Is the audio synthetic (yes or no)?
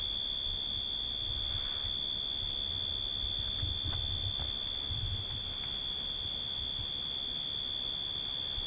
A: no